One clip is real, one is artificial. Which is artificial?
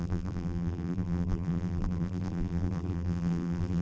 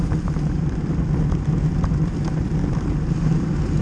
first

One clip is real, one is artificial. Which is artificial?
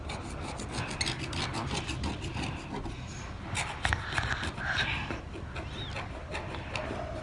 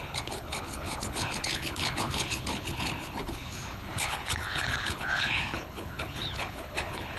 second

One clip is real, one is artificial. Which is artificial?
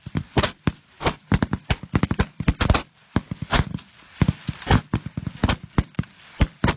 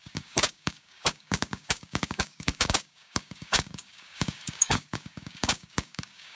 second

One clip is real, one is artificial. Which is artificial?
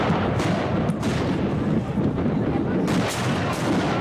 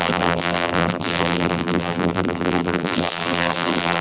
second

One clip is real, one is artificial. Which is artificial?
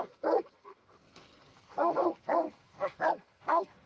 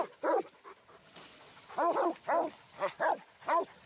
first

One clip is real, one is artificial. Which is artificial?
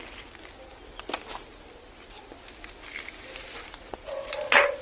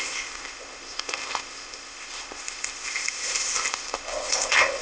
second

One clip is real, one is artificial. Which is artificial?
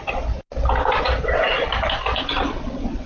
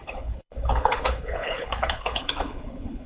second